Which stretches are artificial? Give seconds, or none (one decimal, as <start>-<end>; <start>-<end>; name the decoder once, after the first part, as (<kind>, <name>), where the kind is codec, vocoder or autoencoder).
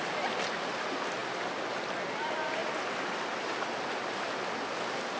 none